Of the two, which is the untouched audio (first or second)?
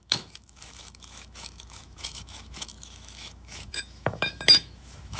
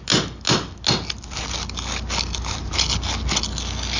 second